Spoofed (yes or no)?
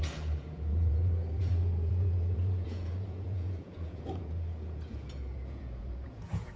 yes